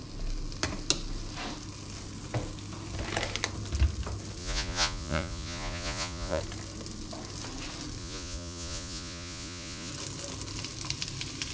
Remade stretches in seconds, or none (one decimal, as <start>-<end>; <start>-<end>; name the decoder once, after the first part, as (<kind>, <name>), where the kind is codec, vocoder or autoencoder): 4.4-6.4 (vocoder, Vocos); 8.0-9.9